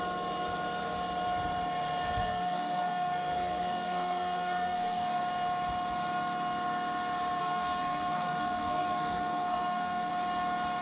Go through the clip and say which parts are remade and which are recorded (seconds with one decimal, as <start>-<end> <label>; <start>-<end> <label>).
0.0-2.2 recorded; 2.2-5.2 remade; 5.2-7.4 recorded; 7.4-10.1 remade; 10.1-10.8 recorded